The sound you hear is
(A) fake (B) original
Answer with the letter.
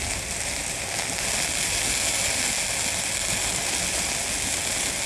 B